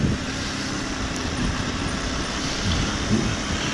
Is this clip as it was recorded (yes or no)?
yes